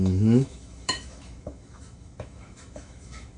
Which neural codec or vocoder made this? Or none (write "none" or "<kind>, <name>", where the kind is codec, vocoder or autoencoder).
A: autoencoder, DAC-VAE